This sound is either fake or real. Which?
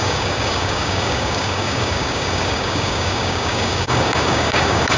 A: fake